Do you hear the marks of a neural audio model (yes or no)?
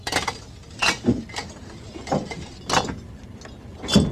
no